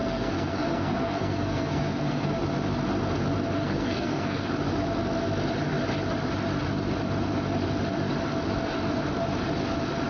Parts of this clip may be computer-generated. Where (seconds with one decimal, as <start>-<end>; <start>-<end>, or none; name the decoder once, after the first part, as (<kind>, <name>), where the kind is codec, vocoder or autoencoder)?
0.0-2.4 (codec, SNAC); 3.6-4.5